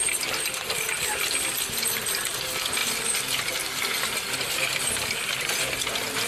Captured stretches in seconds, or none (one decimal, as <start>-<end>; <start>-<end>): 2.8-6.3